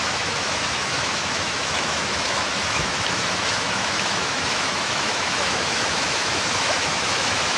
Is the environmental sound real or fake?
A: fake